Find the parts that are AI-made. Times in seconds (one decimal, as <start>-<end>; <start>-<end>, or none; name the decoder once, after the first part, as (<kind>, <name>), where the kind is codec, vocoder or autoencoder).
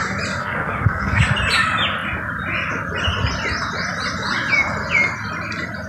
0.4-1.2 (codec, SNAC)